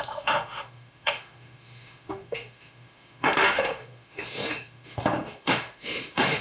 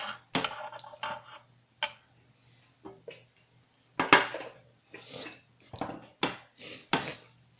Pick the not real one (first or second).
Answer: first